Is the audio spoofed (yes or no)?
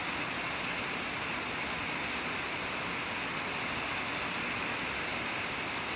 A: no